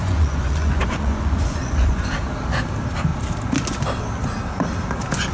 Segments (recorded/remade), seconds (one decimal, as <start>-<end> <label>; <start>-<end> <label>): 0.0-2.1 remade; 2.1-5.3 recorded